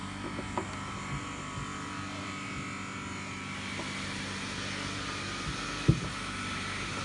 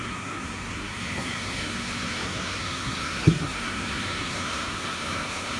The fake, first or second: second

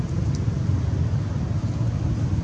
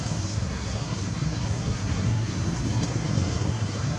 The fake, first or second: second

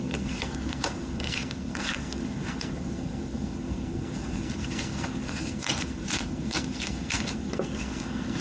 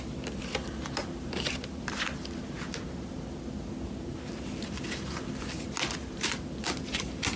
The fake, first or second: first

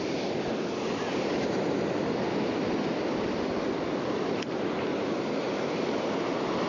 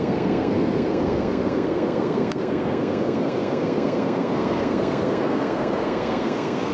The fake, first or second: second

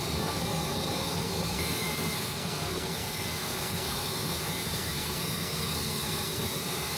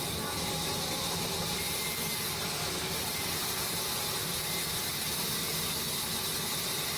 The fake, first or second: first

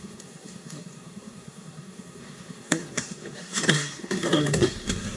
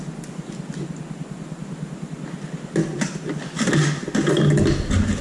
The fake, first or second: first